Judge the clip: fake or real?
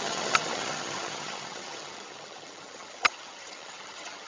fake